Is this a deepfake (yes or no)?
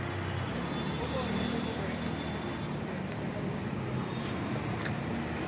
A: no